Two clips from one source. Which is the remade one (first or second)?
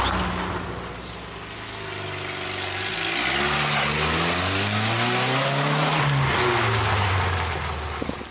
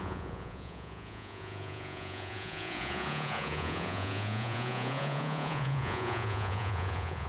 second